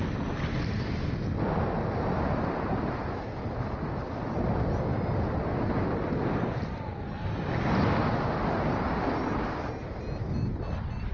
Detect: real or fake real